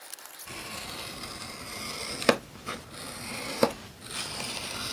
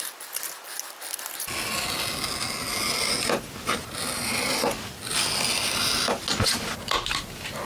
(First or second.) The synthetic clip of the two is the first